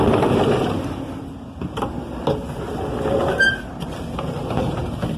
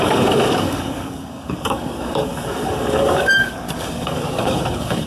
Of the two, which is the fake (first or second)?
second